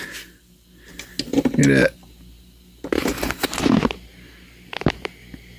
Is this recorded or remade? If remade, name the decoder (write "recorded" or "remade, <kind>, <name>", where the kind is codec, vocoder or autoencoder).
recorded